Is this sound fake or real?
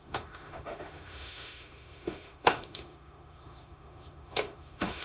fake